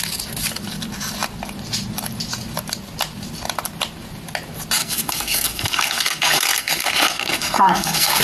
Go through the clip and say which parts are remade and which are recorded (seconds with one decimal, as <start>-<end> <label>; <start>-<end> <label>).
0.0-4.8 recorded; 4.8-8.2 remade